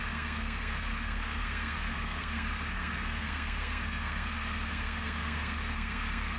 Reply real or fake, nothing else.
fake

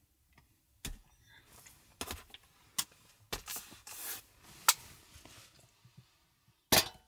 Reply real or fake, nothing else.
real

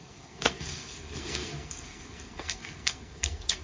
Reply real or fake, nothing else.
fake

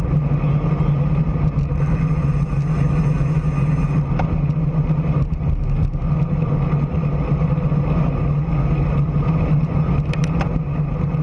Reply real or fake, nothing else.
real